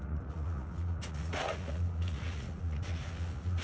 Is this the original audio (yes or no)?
no